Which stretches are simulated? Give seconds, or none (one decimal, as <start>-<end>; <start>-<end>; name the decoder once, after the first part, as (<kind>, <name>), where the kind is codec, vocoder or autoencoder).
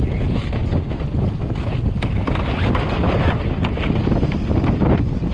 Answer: none